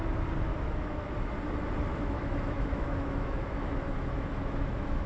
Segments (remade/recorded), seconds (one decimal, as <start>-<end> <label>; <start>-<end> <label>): 0.0-0.5 recorded; 0.5-1.1 remade; 1.1-1.9 recorded; 1.9-5.1 remade